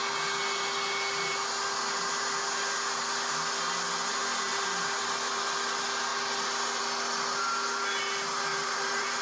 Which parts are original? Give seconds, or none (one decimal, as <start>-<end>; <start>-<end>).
0.0-8.5